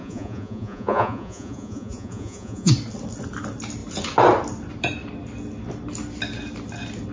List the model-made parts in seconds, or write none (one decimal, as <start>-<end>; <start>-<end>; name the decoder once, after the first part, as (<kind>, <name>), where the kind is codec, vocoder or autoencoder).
0.0-2.7 (vocoder, Vocos)

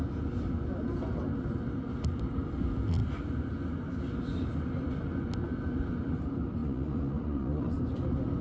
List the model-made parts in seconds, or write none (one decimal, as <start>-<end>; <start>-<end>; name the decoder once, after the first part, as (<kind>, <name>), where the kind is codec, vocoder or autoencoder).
6.6-7.8 (vocoder, Vocos)

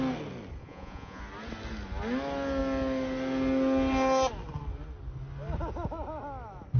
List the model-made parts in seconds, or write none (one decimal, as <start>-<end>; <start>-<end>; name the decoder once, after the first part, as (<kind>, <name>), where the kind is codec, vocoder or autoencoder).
0.6-1.2 (vocoder, Vocos)

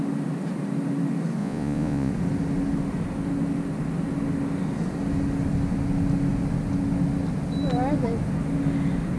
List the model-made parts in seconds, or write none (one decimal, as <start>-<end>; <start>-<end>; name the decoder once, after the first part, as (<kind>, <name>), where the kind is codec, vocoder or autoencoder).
1.4-2.1 (vocoder, Vocos)

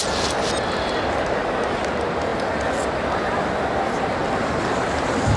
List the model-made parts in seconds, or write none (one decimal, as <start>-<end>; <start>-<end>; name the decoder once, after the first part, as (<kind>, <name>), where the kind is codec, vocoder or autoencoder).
none